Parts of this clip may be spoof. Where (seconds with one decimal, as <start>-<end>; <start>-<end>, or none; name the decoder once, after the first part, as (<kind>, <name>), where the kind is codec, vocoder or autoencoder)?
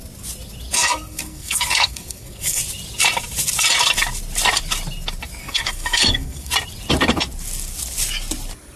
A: 0.7-2.6 (codec, SNAC); 5.4-6.5